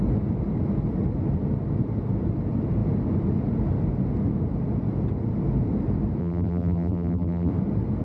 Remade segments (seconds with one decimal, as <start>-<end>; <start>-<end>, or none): 6.2-7.5